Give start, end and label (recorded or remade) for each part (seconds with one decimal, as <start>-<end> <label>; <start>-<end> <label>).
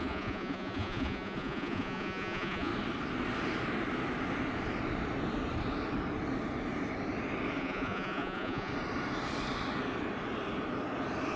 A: 0.0-2.7 remade; 2.7-7.6 recorded; 7.6-8.7 remade; 8.7-11.4 recorded